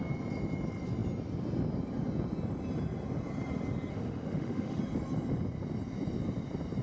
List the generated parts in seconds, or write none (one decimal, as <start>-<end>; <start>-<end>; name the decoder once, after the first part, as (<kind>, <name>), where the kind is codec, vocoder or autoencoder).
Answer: 3.9-4.8 (autoencoder, DAC-VAE)